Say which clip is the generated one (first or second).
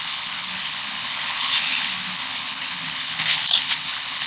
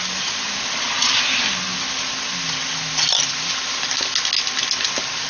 first